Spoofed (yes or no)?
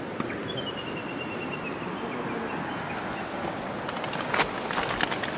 no